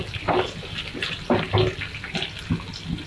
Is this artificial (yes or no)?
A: no